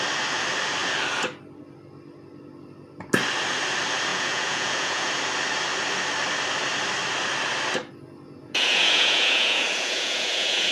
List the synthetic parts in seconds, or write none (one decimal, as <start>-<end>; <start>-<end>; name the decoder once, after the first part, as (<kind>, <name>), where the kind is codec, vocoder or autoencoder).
4.1-5.1 (vocoder, Vocos); 8.4-10.7